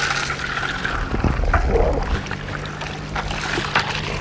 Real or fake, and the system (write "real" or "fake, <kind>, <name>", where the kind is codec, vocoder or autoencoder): real